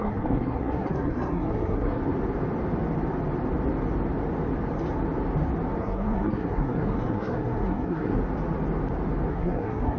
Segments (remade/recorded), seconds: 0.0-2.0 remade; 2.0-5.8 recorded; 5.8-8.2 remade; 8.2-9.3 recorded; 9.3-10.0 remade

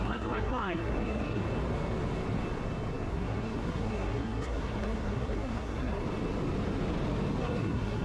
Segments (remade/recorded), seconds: 0.0-1.4 remade; 1.4-3.1 recorded; 3.1-6.0 remade; 6.0-7.4 recorded; 7.4-8.0 remade

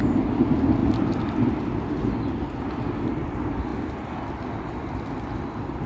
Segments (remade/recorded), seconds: 0.0-5.9 recorded

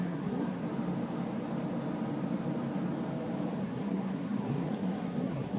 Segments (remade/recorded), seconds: 0.0-0.6 remade; 0.6-3.6 recorded; 3.6-5.6 remade

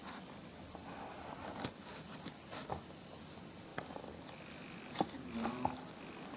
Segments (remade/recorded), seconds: 0.0-6.4 recorded

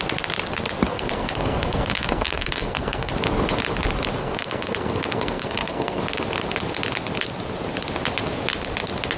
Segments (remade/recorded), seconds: 0.0-0.9 recorded; 0.9-3.1 remade; 3.1-4.2 recorded; 4.2-6.0 remade; 6.0-9.2 recorded